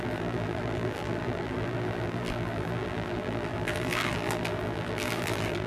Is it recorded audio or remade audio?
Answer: remade